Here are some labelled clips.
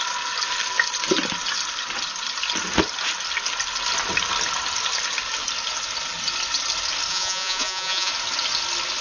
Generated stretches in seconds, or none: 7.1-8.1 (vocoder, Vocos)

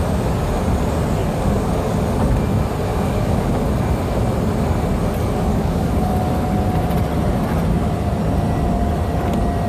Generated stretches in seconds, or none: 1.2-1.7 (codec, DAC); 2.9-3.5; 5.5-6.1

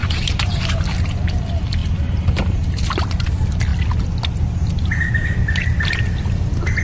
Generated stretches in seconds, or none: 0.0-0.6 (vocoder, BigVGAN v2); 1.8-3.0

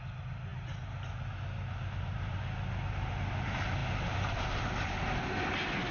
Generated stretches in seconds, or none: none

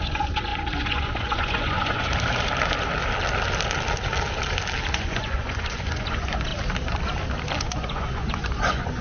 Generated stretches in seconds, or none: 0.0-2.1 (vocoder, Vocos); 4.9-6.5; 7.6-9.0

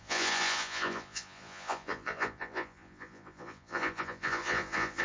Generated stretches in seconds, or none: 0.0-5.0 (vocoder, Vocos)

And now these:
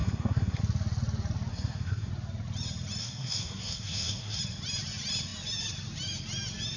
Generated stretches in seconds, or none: 0.0-0.6 (codec, SNAC); 1.5-2.1; 3.0-4.4

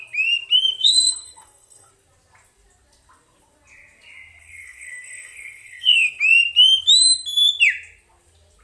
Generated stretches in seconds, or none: 0.8-1.9 (codec, SNAC); 4.4-6.2